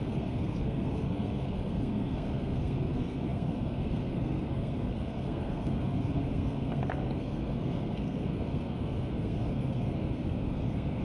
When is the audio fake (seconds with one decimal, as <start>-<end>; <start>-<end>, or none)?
0.0-11.0